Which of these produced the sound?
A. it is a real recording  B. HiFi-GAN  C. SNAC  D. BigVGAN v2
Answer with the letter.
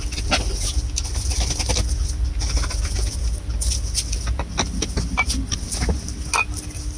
A